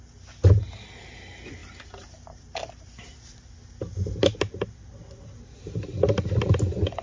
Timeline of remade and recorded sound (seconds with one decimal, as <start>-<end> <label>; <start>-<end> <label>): 0.0-7.0 recorded